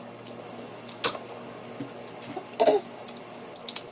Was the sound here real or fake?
real